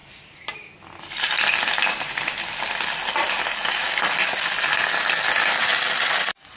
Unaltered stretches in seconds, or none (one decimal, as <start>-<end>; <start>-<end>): 0.0-6.6